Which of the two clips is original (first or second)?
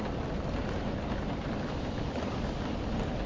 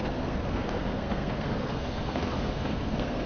first